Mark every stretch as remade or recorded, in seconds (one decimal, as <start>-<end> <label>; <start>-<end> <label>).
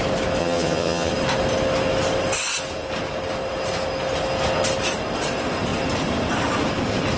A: 0.0-0.4 recorded; 0.4-1.1 remade; 1.1-7.2 recorded